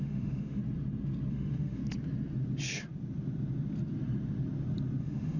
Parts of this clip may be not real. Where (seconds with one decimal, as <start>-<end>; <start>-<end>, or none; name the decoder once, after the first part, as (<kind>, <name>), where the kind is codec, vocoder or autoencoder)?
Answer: 0.0-0.6 (autoencoder, DAC-VAE); 1.3-1.8; 5.0-5.4